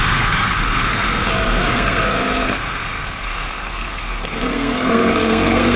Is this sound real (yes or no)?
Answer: no